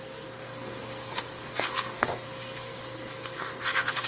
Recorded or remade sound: remade